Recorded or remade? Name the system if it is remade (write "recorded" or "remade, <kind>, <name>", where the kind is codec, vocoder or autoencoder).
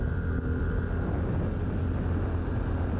recorded